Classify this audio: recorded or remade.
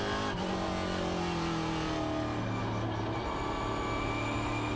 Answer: recorded